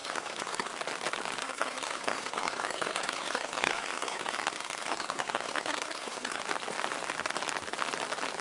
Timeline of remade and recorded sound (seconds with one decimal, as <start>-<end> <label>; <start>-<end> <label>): 0.0-0.7 remade; 0.7-1.4 recorded; 1.4-6.4 remade; 6.4-8.4 recorded

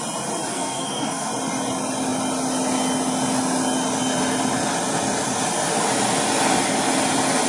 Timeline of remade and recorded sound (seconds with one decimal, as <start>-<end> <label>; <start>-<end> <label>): 0.0-0.5 recorded; 0.5-1.3 remade; 1.3-7.5 recorded

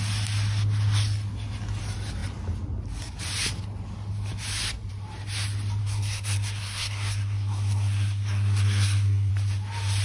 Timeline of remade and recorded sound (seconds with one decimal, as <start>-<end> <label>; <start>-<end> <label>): 0.0-5.8 recorded; 5.8-9.3 remade; 9.3-10.0 recorded

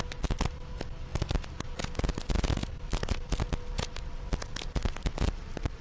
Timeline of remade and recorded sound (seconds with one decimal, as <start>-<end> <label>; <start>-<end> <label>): 0.0-5.8 recorded

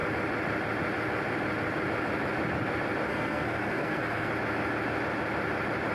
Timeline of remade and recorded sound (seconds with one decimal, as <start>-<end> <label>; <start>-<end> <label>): 0.0-3.1 recorded; 3.1-4.3 remade; 4.3-5.9 recorded

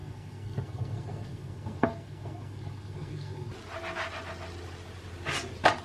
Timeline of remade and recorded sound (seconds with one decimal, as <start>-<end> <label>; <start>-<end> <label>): 0.0-3.5 remade; 3.5-5.8 recorded

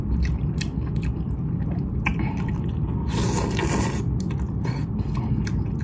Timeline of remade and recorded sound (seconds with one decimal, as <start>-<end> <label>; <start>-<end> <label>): 0.0-5.8 recorded